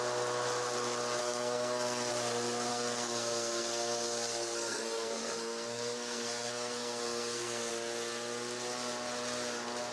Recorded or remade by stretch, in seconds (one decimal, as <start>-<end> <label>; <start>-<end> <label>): 0.0-1.2 recorded; 1.2-2.1 remade; 2.1-2.7 recorded; 2.7-7.7 remade; 7.7-9.9 recorded